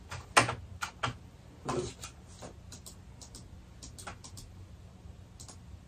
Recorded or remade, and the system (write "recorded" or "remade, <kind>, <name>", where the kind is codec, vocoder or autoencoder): recorded